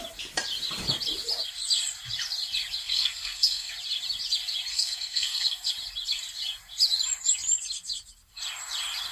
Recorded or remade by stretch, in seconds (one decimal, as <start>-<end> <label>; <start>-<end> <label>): 0.0-2.8 recorded; 2.8-3.7 remade; 3.7-4.7 recorded; 4.7-5.7 remade; 5.7-9.1 recorded